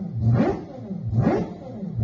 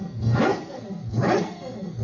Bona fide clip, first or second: first